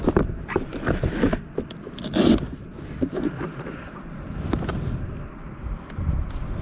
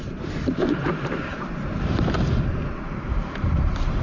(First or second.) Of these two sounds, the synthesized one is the second